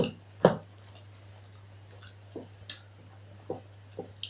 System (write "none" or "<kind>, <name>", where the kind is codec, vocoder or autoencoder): none